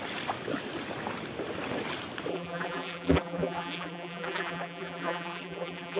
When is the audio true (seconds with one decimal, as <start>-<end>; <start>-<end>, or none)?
0.0-2.3